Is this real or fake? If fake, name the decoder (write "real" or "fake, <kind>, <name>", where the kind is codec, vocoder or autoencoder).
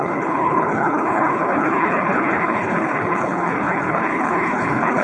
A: fake, codec, HILCodec